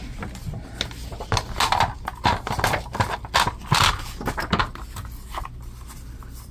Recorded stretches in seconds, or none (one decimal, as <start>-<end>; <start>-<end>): 0.0-6.5